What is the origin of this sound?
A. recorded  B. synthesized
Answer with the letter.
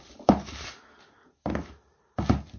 A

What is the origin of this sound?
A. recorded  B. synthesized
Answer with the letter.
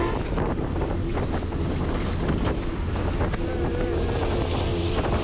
A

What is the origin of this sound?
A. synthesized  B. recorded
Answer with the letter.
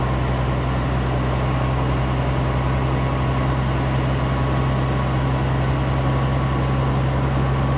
B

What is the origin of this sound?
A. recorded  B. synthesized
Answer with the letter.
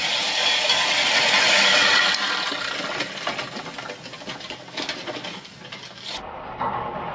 A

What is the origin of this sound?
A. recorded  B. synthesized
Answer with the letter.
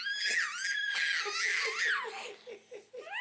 A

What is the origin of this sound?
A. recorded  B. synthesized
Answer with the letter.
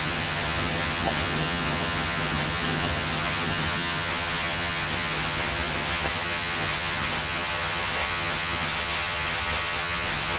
B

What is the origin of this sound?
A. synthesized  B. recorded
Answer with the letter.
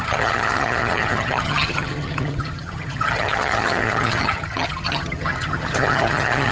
A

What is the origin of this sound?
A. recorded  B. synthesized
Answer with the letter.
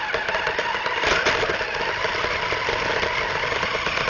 A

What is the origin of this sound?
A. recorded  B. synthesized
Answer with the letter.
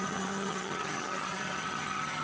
B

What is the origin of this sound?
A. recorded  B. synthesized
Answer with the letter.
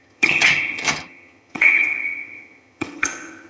B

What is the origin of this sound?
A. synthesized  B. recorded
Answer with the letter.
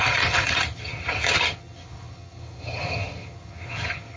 A